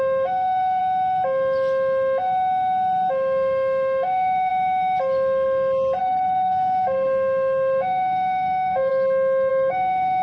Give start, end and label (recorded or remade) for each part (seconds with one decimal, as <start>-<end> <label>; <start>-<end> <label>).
0.0-0.8 remade; 0.8-3.1 recorded; 3.1-4.5 remade; 4.5-6.0 recorded; 6.0-8.9 remade; 8.9-9.5 recorded; 9.5-10.2 remade